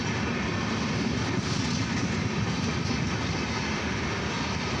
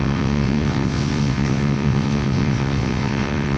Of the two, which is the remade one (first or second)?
second